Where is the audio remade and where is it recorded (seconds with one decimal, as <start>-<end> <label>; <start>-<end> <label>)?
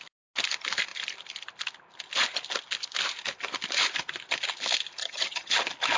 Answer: 0.0-5.0 recorded; 5.0-5.5 remade; 5.5-6.0 recorded